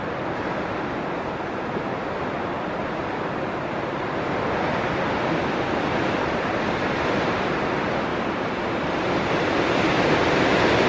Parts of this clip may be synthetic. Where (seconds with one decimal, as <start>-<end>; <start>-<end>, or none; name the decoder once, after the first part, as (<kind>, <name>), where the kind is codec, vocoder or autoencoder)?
8.1-10.5 (vocoder, BigVGAN v2)